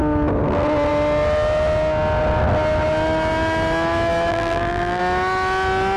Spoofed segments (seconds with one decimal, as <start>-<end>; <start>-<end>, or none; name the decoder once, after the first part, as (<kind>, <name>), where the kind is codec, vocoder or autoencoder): 4.3-5.0 (vocoder, BigVGAN v2)